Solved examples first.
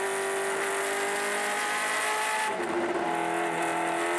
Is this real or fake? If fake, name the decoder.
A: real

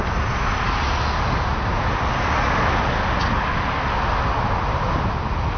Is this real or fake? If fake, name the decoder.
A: real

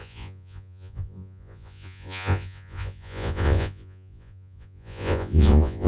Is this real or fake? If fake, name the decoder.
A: fake, vocoder, Vocos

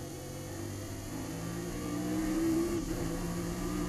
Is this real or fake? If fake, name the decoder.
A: fake, vocoder, BigVGAN v2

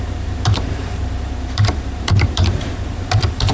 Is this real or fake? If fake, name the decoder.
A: fake, vocoder, BigVGAN v2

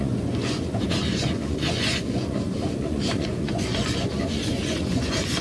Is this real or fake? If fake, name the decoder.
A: fake, vocoder, Vocos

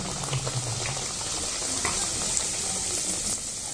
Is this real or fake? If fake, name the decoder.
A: real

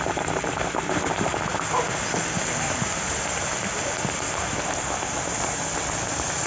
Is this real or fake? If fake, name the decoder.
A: real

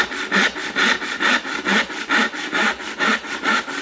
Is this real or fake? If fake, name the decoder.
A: real